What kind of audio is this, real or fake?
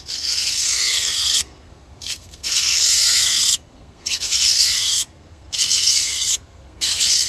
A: fake